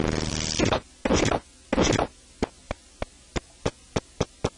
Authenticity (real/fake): real